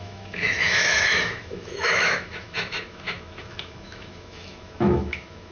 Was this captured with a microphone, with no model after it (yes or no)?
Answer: no